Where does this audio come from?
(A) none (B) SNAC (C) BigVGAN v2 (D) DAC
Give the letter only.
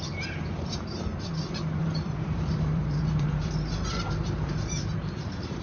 C